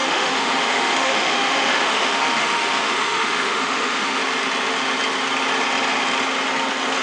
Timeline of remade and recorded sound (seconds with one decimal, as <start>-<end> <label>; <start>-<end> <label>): 0.0-4.2 remade; 4.2-7.0 recorded